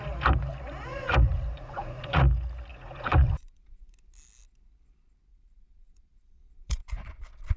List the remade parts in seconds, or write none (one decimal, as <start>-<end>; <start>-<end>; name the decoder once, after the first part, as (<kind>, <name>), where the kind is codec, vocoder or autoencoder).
0.9-2.2 (vocoder, Vocos); 2.7-3.9; 5.3-6.8